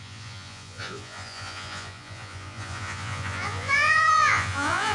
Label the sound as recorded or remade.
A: remade